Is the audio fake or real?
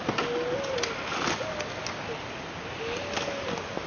real